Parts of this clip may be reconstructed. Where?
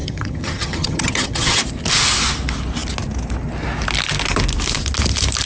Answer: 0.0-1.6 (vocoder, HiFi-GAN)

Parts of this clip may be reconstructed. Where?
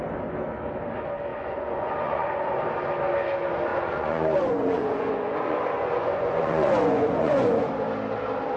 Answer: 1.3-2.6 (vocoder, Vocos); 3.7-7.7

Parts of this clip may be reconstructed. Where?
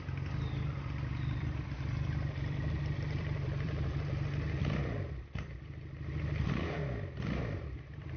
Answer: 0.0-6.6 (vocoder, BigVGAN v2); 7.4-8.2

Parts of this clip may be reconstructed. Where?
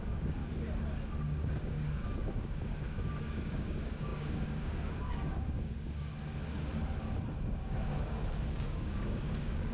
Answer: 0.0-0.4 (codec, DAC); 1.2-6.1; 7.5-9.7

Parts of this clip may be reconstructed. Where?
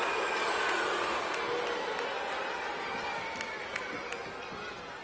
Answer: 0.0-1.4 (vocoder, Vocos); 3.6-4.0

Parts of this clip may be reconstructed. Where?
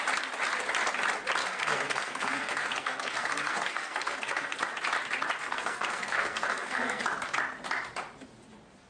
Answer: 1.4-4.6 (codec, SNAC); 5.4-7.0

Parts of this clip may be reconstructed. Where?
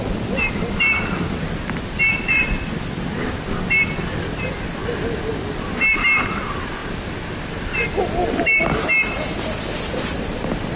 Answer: none